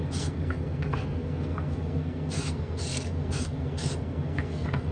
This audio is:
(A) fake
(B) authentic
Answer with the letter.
A